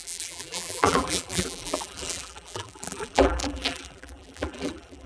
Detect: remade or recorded remade